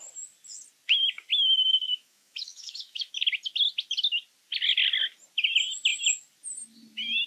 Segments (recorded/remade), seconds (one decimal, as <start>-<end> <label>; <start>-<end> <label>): 0.0-1.3 recorded; 1.3-3.1 remade; 3.1-7.3 recorded